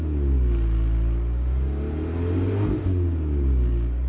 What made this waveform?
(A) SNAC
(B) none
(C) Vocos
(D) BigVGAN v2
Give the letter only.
B